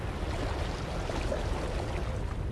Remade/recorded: recorded